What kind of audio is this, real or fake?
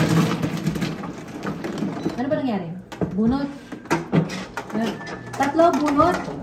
real